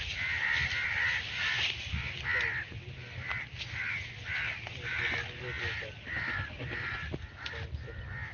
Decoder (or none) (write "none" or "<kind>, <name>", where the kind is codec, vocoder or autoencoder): none